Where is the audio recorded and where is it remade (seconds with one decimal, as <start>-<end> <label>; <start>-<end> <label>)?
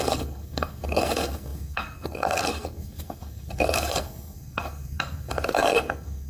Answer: 0.0-6.3 remade